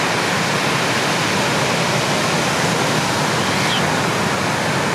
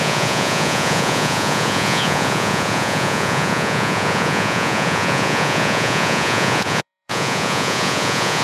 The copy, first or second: second